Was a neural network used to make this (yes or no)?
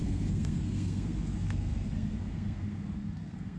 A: yes